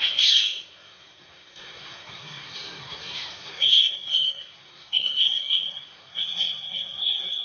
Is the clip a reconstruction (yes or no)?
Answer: yes